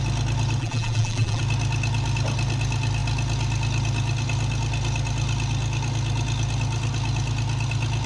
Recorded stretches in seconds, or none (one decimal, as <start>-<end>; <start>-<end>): 0.0-0.6; 1.4-8.1